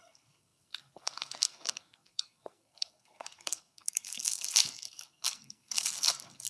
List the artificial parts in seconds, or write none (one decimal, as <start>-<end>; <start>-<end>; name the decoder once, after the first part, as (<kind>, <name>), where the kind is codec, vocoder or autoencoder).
0.0-6.5 (codec, SNAC)